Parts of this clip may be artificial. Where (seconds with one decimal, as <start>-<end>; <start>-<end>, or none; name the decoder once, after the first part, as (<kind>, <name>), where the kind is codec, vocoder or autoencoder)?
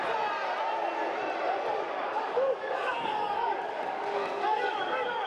1.7-5.3 (codec, DAC)